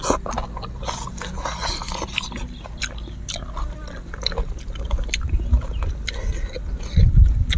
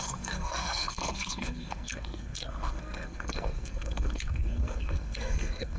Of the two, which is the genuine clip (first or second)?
first